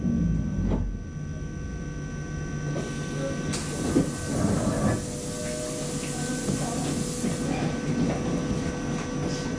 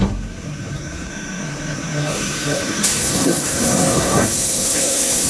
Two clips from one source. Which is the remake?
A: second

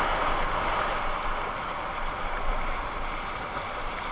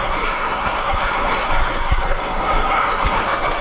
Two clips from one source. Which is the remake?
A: second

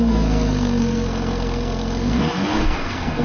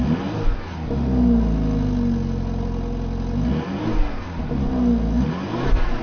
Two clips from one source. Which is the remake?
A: first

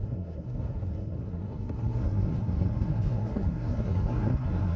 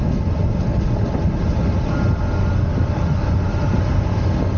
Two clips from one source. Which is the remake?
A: first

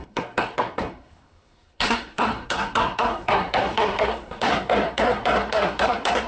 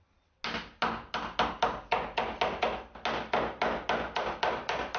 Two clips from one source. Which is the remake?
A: first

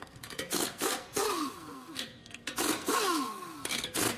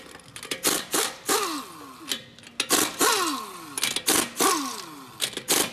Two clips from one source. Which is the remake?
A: first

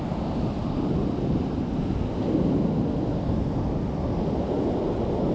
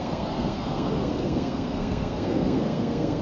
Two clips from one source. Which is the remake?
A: second